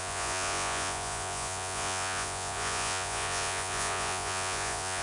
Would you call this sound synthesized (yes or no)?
yes